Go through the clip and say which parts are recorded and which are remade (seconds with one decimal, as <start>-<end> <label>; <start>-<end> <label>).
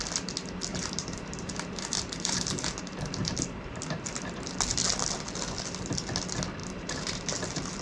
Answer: 0.0-0.7 recorded; 0.7-2.8 remade; 2.8-3.2 recorded; 3.2-4.5 remade; 4.5-6.6 recorded; 6.6-7.8 remade